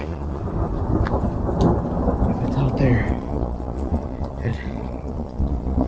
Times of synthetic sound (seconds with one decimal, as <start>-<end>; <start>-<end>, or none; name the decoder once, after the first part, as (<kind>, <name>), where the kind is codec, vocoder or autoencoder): 0.0-0.4 (vocoder, Vocos); 3.1-5.9